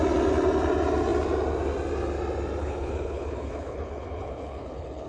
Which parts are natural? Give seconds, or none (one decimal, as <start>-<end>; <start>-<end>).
0.0-2.6